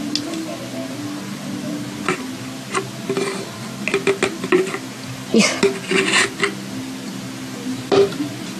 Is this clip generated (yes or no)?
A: no